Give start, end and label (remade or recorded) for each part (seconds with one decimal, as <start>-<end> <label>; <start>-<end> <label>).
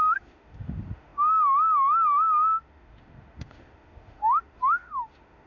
0.0-5.5 remade